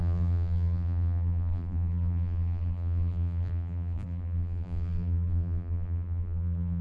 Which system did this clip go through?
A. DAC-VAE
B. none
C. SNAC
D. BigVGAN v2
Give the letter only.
D